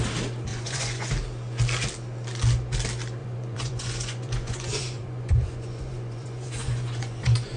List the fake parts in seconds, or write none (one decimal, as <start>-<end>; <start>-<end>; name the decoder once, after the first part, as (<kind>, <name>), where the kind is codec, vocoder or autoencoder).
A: 0.5-1.1 (vocoder, Vocos); 3.2-7.6